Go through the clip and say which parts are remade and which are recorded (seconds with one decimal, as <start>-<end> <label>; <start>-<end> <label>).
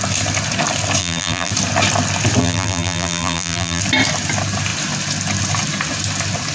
0.0-1.0 recorded; 1.0-1.5 remade; 1.5-2.4 recorded; 2.4-3.8 remade; 3.8-6.5 recorded